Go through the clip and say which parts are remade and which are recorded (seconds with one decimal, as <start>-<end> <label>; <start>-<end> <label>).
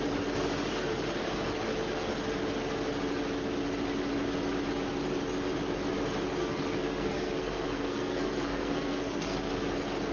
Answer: 0.0-6.4 recorded; 6.4-9.5 remade; 9.5-10.1 recorded